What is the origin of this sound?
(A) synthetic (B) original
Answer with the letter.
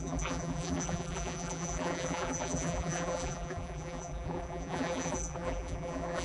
A